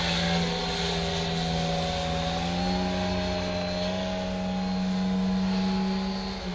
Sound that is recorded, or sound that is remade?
recorded